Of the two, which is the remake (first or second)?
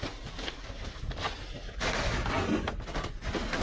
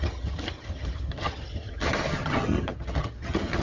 second